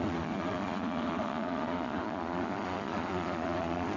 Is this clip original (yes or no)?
no